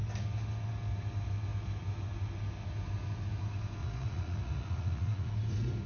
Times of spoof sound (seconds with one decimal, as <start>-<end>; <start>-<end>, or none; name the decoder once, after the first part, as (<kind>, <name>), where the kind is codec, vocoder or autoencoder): 3.8-5.3 (vocoder, Vocos)